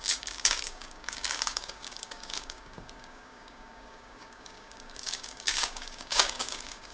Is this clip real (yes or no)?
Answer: no